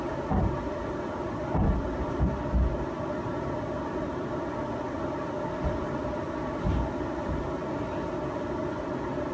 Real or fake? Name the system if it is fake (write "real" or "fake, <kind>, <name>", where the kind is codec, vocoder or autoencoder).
real